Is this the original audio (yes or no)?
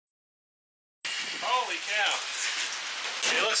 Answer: yes